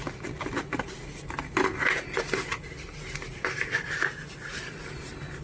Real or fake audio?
real